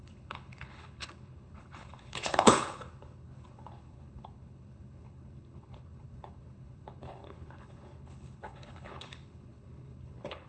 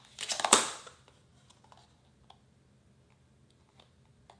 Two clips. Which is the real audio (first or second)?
second